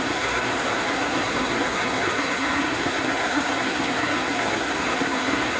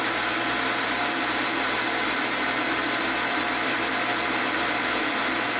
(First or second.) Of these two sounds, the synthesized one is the first